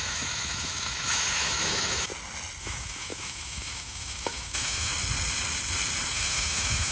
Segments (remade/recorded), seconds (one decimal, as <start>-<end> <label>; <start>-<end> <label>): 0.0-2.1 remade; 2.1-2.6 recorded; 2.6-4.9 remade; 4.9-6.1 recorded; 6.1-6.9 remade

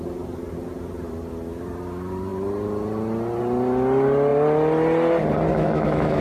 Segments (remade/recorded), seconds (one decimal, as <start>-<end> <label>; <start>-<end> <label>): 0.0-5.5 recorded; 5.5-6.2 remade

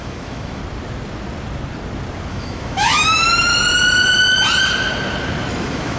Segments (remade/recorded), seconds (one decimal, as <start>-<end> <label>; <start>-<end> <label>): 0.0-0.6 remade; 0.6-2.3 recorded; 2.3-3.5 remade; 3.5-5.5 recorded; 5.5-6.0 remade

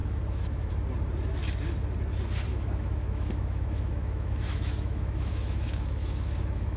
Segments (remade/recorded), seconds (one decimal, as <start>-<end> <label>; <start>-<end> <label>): 0.0-0.7 remade; 0.7-2.5 recorded; 2.5-6.8 remade

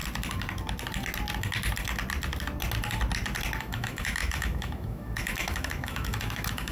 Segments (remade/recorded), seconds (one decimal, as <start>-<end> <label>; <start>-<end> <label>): 0.0-3.6 recorded; 3.6-6.7 remade